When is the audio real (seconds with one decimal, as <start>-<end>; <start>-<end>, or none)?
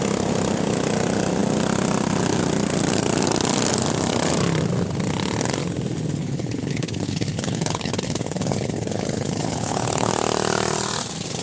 0.0-6.2; 10.1-11.4